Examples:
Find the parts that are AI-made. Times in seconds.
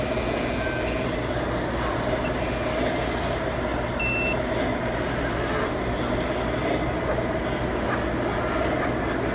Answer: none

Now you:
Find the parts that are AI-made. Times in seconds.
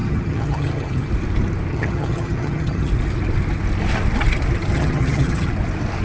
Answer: 0.0-1.1 (vocoder, HiFi-GAN); 1.7-2.9; 4.7-5.5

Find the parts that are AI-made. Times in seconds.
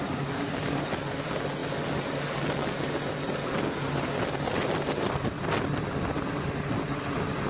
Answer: none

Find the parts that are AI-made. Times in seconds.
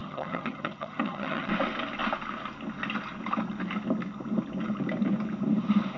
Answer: 0.0-1.5 (vocoder, HiFi-GAN)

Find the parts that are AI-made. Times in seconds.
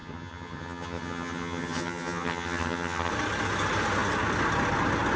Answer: 0.0-3.1 (vocoder, HiFi-GAN)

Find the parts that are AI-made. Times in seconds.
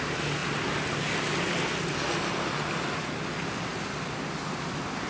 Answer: none